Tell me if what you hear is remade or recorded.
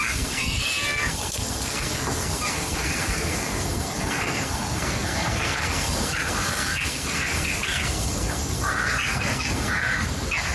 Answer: remade